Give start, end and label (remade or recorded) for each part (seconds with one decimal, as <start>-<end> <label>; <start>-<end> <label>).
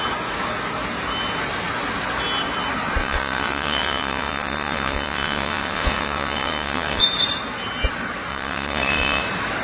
0.0-3.0 recorded; 3.0-7.0 remade; 7.0-8.3 recorded; 8.3-9.2 remade; 9.2-9.6 recorded